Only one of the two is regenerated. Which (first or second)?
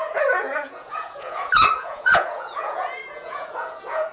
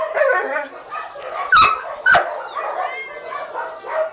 first